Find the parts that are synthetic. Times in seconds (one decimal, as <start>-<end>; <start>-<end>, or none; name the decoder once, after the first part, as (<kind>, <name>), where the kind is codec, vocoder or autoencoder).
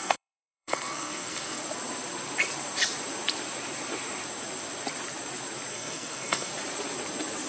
0.0-1.6 (codec, SNAC); 5.7-6.5